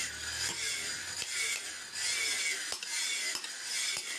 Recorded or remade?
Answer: recorded